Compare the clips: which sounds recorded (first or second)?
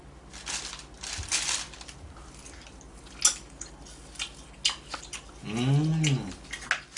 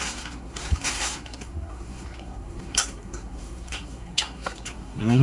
first